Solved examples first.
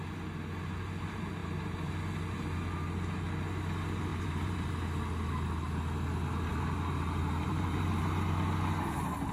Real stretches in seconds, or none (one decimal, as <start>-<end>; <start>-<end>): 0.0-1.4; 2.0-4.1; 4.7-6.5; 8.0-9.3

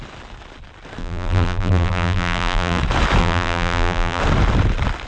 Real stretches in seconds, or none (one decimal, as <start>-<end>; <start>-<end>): 0.0-1.0; 2.8-3.2; 4.2-5.1

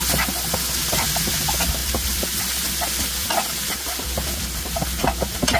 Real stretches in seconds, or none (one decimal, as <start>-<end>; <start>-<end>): 0.0-1.8; 5.0-5.6